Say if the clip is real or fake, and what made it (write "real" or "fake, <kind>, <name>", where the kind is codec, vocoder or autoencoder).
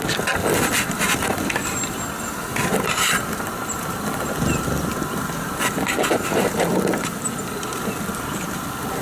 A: real